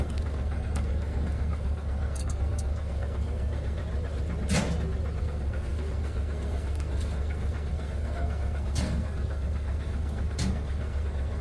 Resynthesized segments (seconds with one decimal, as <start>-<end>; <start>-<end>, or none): 0.0-3.8; 5.2-11.4